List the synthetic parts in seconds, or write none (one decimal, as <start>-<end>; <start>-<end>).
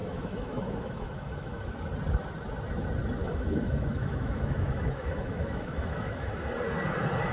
0.0-1.7; 3.2-6.3